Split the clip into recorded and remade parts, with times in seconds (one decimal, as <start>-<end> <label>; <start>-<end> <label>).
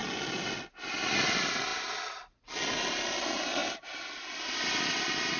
0.0-5.4 recorded